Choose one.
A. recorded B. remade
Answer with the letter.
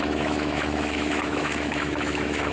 B